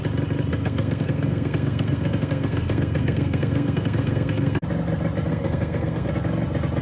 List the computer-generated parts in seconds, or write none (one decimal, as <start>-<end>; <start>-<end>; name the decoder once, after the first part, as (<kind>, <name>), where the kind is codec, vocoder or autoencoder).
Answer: 0.5-4.6 (codec, SNAC); 5.3-6.1